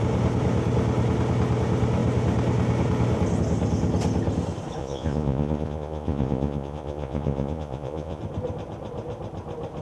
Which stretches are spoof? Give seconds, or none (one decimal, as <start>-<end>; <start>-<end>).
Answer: 4.8-8.2